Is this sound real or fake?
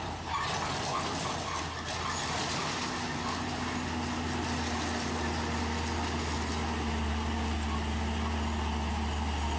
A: real